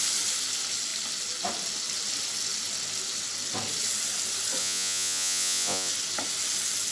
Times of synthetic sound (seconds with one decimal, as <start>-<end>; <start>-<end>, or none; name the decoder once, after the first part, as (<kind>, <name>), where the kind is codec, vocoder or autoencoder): 4.6-5.9 (vocoder, Vocos)